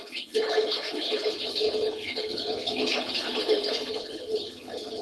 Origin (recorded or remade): remade